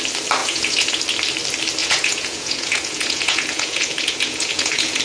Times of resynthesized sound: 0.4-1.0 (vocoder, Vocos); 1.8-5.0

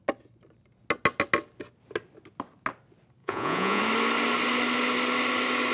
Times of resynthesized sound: 3.2-3.8 (vocoder, Vocos)

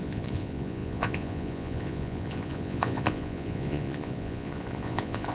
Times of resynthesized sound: 0.0-5.3 (vocoder, Vocos)

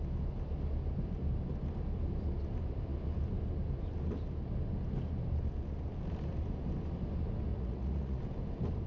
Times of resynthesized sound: 7.5-8.2 (vocoder, Vocos)

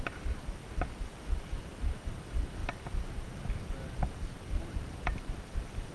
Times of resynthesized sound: none